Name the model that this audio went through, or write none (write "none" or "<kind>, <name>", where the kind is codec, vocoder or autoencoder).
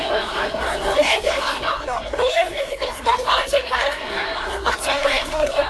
codec, SNAC